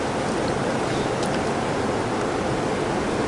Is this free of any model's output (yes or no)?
yes